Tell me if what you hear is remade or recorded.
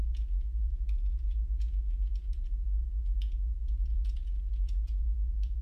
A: remade